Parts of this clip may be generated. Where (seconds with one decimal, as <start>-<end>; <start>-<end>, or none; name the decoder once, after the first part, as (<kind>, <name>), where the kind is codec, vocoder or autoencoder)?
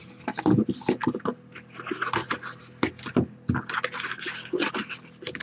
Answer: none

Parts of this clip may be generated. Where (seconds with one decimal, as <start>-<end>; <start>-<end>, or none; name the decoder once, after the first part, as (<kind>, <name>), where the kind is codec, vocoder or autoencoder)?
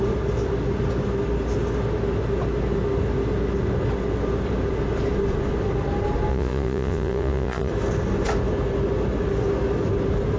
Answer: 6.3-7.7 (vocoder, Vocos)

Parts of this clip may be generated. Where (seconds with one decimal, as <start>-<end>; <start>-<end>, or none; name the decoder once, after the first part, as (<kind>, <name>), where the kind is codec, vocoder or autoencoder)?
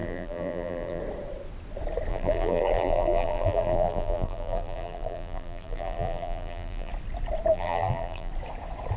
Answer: 0.0-1.0 (vocoder, BigVGAN v2); 2.1-6.9; 7.5-8.3